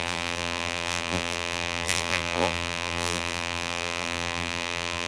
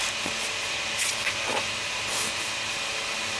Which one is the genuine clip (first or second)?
second